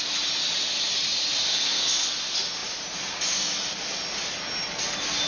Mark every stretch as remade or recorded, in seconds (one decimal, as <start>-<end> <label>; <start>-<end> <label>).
0.0-1.5 recorded; 1.5-2.1 remade; 2.1-5.3 recorded